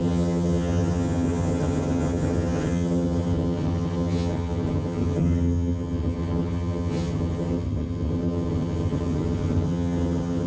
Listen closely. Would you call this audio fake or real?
fake